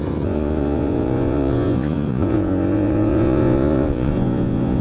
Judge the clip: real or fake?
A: fake